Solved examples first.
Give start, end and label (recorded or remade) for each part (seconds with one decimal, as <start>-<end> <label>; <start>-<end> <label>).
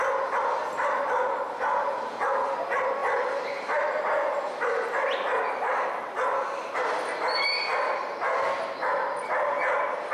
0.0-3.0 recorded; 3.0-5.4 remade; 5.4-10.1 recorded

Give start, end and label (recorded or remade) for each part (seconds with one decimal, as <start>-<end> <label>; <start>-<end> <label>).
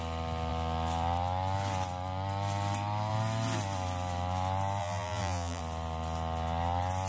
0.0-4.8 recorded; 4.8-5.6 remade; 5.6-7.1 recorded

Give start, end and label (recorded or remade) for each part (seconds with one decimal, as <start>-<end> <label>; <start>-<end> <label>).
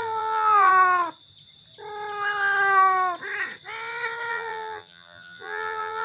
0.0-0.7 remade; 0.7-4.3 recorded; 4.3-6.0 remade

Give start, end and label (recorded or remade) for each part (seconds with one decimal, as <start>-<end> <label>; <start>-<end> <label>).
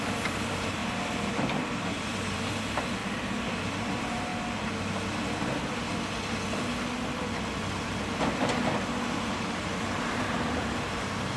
0.0-0.8 remade; 0.8-1.4 recorded; 1.4-3.0 remade; 3.0-3.6 recorded; 3.6-4.3 remade; 4.3-9.3 recorded; 9.3-11.4 remade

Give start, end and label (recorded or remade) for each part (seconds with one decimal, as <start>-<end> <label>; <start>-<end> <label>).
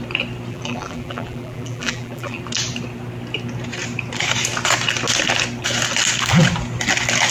0.0-0.5 recorded; 0.5-2.4 remade; 2.4-7.3 recorded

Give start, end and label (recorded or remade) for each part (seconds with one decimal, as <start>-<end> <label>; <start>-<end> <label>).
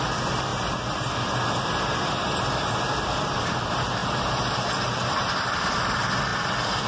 0.0-0.5 remade; 0.5-1.6 recorded; 1.6-6.3 remade; 6.3-6.9 recorded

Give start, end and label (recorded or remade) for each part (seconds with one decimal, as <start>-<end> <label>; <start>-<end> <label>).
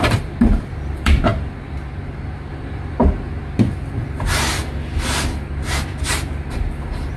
0.0-1.3 remade; 1.3-2.5 recorded; 2.5-3.0 remade; 3.0-6.1 recorded; 6.1-7.2 remade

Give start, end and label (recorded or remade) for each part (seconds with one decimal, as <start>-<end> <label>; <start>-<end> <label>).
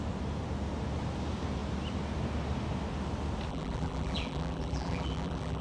0.0-3.5 recorded; 3.5-5.6 remade